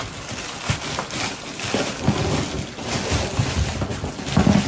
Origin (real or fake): real